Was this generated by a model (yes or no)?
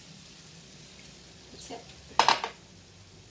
no